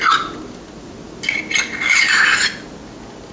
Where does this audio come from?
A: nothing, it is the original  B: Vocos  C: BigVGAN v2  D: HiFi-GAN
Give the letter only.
A